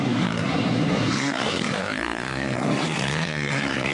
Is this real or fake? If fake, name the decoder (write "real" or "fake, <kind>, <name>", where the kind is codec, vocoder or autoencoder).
fake, codec, SNAC